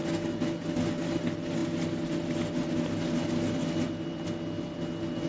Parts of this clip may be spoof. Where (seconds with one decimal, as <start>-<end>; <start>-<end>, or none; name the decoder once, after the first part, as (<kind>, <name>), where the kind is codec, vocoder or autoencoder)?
none

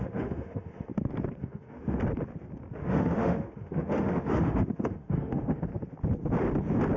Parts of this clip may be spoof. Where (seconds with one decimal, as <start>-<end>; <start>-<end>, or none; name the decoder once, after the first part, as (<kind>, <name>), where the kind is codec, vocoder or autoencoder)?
0.0-0.9 (autoencoder, DAC-VAE); 1.4-2.0; 2.8-5.7

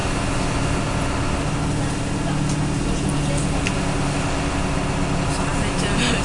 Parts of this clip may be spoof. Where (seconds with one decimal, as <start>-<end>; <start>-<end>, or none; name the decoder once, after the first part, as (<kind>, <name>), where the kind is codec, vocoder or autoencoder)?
none

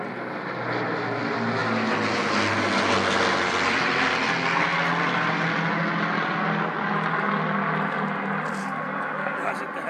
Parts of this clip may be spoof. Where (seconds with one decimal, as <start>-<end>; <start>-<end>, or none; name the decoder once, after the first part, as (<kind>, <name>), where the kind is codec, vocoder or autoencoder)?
8.6-9.5 (codec, SNAC)

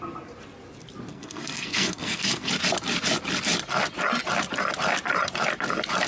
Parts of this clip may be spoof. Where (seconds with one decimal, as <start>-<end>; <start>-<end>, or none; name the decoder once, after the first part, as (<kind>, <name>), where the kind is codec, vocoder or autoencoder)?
1.1-2.5 (codec, SNAC)